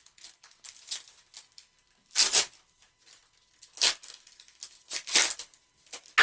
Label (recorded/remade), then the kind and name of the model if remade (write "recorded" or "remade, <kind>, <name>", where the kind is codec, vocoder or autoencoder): recorded